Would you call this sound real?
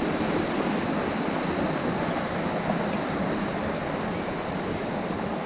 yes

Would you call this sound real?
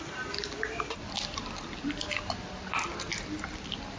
yes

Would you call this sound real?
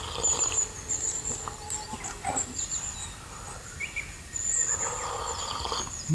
yes